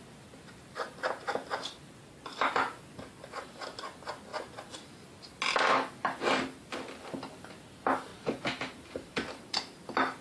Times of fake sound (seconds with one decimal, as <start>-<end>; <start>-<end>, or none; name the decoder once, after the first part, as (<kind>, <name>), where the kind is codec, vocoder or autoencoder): 8.1-9.6 (vocoder, BigVGAN v2)